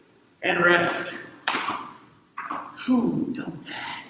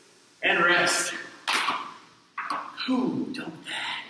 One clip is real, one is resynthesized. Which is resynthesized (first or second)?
first